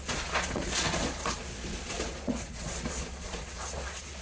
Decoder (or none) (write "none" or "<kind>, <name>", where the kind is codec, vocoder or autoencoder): vocoder, Vocos